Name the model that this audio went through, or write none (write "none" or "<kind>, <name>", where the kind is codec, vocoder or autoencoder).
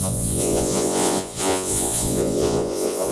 vocoder, Vocos